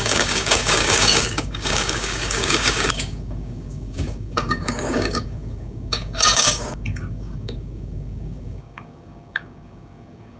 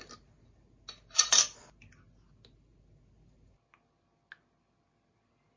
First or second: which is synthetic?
first